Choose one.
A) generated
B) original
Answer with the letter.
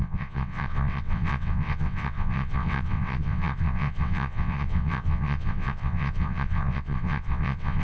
A